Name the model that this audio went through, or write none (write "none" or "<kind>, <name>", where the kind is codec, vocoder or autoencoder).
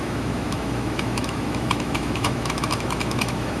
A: autoencoder, DAC-VAE